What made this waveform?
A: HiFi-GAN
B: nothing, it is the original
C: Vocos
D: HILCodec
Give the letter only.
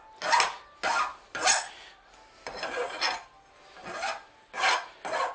B